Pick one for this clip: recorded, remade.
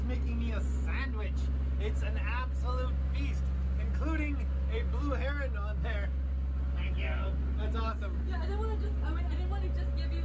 recorded